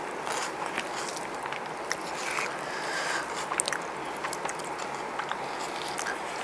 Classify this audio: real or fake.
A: real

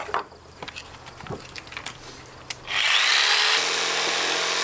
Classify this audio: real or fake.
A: real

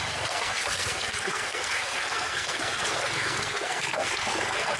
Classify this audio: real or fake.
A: fake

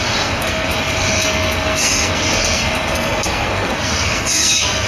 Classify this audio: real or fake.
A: fake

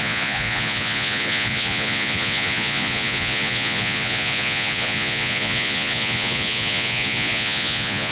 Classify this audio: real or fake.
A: fake